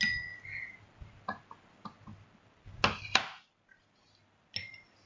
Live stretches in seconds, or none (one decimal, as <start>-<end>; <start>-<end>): 0.0-5.1